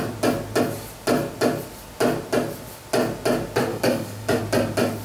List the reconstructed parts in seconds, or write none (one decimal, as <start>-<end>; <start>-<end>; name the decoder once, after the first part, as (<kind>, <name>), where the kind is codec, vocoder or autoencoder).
3.7-4.4 (codec, DAC)